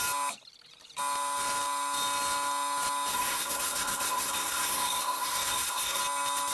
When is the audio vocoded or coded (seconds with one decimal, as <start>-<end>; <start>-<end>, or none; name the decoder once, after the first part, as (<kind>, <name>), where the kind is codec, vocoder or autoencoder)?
3.1-6.0 (codec, SNAC)